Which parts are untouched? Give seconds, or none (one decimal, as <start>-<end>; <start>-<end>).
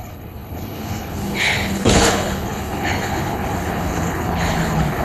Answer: none